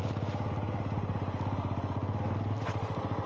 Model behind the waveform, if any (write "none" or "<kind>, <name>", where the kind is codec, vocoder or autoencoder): none